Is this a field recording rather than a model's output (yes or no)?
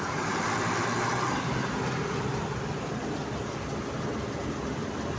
yes